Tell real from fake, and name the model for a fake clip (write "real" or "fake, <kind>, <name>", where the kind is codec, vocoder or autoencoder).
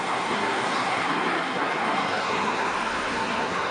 fake, codec, SNAC